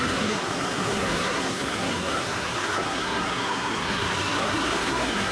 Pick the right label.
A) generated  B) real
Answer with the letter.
A